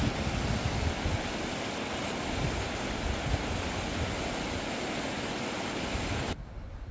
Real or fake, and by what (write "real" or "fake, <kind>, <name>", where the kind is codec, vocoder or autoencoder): real